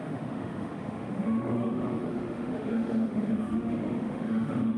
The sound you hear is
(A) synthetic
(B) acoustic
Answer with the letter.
A